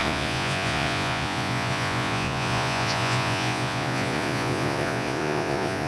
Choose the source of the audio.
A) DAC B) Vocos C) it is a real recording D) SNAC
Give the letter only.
B